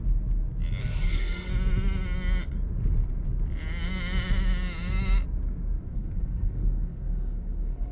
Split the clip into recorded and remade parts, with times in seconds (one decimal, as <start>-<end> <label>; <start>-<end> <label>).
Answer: 0.0-0.8 recorded; 0.8-1.5 remade; 1.5-5.9 recorded; 5.9-7.9 remade